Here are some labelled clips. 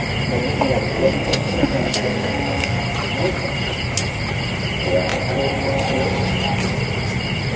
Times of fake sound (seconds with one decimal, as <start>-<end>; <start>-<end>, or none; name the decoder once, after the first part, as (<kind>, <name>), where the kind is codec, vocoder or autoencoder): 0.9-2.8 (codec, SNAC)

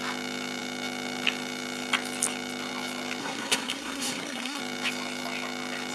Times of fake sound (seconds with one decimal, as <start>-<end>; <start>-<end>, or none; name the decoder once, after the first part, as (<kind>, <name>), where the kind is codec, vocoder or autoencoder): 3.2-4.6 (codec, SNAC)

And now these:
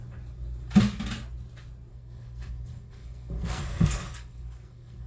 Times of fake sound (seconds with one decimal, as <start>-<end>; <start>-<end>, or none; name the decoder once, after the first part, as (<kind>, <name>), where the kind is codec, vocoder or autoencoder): 1.9-5.1 (codec, SNAC)

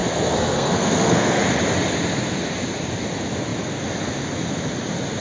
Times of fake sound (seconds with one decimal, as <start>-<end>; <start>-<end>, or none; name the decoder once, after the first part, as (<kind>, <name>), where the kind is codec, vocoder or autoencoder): 0.0-1.4 (codec, SNAC)

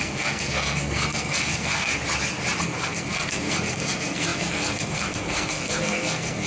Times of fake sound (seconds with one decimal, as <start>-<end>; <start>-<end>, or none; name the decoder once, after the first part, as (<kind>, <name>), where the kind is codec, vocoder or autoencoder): 0.0-1.9 (codec, SNAC); 2.6-6.5

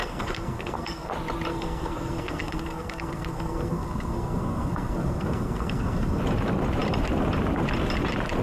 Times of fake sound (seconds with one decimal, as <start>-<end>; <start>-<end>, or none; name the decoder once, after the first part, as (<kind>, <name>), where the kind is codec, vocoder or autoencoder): 0.0-1.1 (codec, SNAC); 1.5-6.2

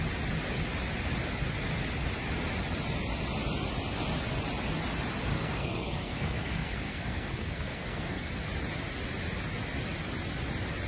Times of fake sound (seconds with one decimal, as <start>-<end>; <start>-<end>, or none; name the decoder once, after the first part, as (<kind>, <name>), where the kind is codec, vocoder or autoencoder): 5.3-8.3 (codec, SNAC)

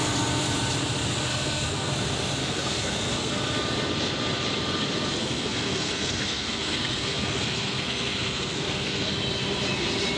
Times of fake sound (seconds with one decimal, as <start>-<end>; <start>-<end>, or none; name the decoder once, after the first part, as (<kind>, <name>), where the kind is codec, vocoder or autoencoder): 1.3-1.9 (codec, SNAC); 2.4-3.4; 5.2-9.1